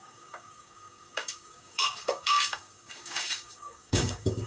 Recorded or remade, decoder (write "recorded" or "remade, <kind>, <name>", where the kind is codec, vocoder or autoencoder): remade, codec, DAC